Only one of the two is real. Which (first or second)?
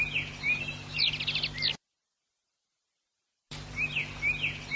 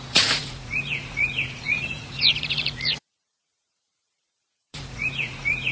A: first